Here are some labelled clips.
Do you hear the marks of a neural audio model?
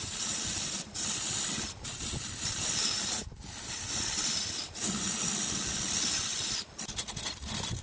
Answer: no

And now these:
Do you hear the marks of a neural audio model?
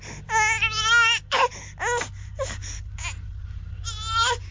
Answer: no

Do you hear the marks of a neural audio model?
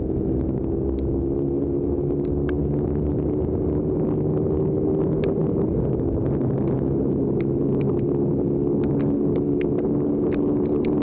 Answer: no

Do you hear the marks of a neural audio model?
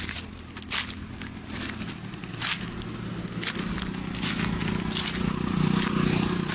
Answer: no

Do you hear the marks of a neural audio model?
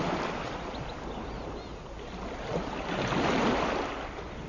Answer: no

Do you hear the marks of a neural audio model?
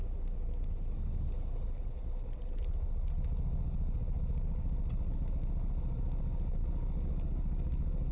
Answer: no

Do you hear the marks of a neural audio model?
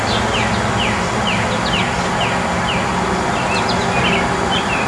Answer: no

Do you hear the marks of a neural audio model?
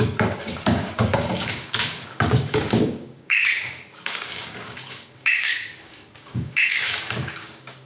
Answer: yes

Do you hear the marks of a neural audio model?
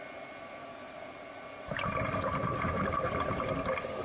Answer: no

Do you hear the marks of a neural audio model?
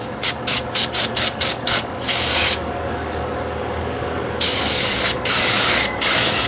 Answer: yes